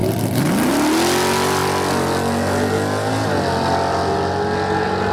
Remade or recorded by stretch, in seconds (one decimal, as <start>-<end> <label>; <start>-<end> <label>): 0.0-5.1 recorded